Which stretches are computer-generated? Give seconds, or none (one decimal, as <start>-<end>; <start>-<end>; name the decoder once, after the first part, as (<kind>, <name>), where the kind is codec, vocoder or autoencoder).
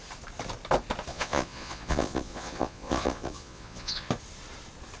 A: 1.1-4.1 (vocoder, Vocos)